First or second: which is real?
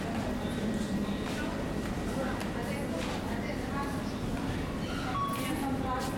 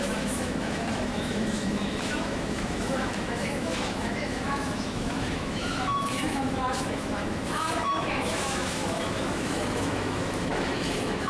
first